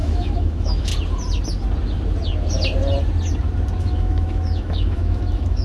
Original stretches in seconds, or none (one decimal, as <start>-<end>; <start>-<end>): 0.9-3.8